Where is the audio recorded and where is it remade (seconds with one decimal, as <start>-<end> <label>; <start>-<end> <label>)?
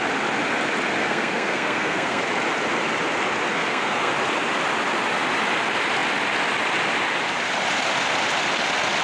0.0-1.0 recorded; 1.0-2.2 remade; 2.2-3.5 recorded; 3.5-4.1 remade; 4.1-9.0 recorded